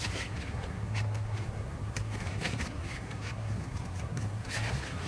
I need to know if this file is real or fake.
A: fake